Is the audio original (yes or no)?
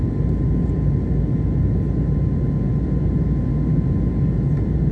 yes